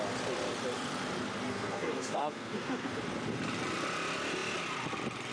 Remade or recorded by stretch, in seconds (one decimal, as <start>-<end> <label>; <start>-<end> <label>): 0.0-1.5 recorded; 1.5-2.9 remade; 2.9-5.3 recorded